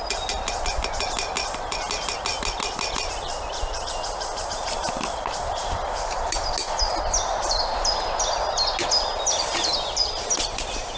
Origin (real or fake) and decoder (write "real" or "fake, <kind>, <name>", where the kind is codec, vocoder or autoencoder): real